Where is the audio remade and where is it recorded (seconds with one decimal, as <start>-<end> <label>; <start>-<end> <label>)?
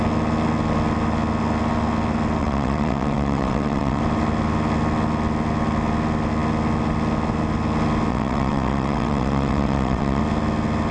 0.0-2.4 recorded; 2.4-4.0 remade; 4.0-8.1 recorded; 8.1-10.2 remade; 10.2-10.9 recorded